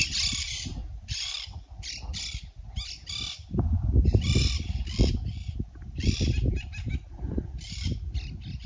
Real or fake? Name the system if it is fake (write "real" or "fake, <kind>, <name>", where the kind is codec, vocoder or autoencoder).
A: real